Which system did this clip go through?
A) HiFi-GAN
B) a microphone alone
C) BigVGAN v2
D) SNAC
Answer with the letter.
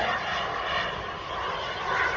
B